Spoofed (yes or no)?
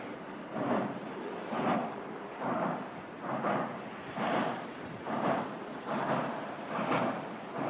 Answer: yes